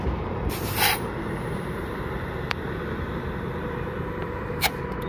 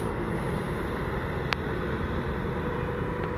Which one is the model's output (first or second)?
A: first